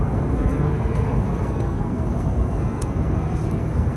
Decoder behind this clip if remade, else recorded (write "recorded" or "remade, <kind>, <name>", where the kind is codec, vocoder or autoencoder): remade, codec, SNAC